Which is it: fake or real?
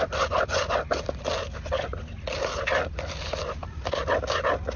real